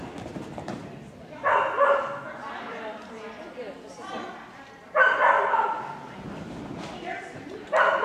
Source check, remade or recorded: recorded